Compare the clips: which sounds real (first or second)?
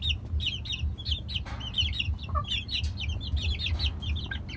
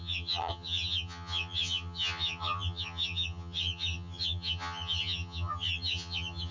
first